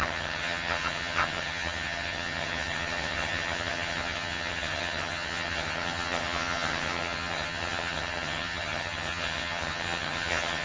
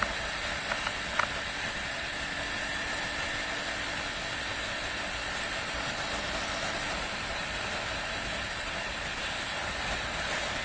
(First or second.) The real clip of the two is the second